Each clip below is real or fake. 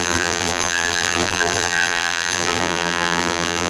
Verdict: fake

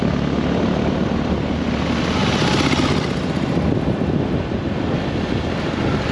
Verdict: real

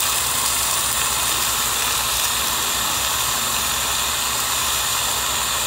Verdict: real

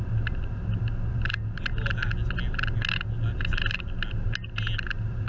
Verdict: real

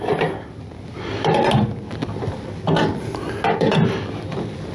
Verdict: real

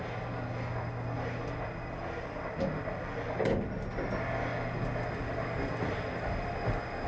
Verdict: real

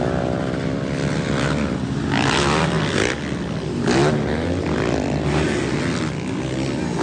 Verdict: real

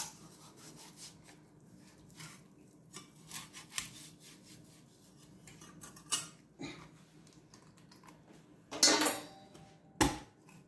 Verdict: real